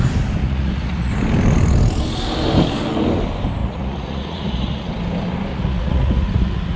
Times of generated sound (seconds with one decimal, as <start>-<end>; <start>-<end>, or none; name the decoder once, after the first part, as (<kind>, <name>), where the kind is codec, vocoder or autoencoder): 0.4-1.1 (vocoder, Vocos); 3.6-4.9; 5.5-6.8